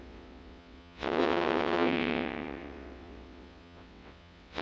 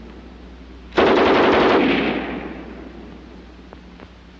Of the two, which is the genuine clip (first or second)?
second